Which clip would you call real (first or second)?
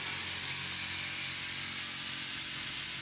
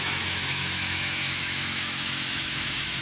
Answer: first